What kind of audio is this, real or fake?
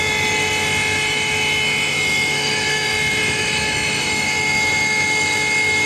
fake